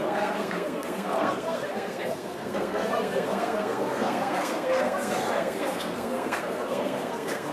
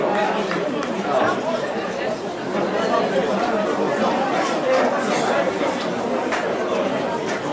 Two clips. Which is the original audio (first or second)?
second